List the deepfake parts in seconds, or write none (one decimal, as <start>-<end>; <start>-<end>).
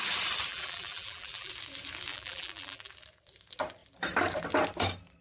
0.5-1.5; 2.1-2.9